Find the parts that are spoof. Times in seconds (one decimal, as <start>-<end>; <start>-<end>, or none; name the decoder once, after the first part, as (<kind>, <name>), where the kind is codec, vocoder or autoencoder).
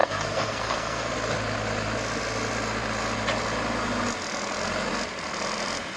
0.0-1.1 (codec, SNAC)